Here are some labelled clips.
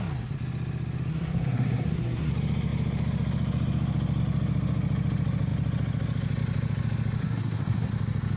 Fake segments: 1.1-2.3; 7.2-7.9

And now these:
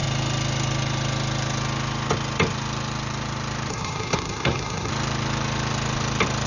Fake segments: 3.7-4.9

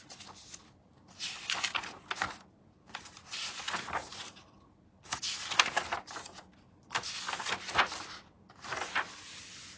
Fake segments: 1.2-3.5